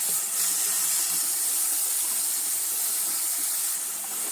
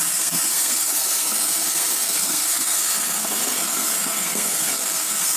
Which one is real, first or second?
first